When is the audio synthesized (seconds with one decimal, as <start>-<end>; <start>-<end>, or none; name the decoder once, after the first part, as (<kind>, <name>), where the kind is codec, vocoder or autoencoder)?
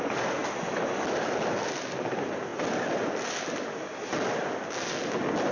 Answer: none